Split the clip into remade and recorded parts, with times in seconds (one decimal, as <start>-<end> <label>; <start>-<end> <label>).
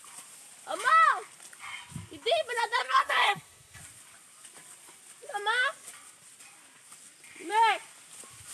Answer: 0.0-2.8 recorded; 2.8-3.8 remade; 3.8-8.5 recorded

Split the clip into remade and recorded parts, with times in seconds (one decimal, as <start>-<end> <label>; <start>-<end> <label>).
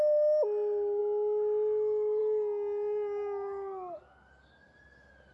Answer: 0.0-5.3 recorded